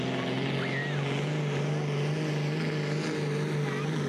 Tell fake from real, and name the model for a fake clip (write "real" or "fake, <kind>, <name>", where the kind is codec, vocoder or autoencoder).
real